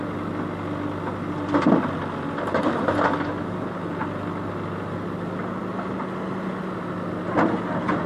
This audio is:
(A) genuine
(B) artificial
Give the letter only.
A